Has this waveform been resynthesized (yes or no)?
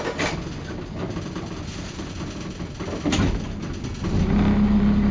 no